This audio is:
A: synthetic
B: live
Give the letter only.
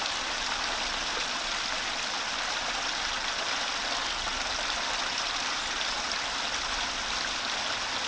B